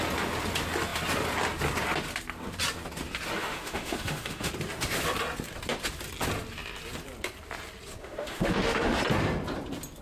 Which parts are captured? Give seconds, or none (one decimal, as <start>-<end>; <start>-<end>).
0.0-3.4; 4.5-8.0; 9.0-10.0